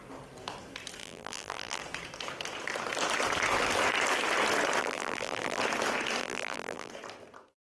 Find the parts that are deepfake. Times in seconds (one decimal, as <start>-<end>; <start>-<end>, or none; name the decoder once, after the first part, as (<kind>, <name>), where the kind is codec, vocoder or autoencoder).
1.0-1.8 (vocoder, BigVGAN v2); 4.8-5.6; 6.2-6.9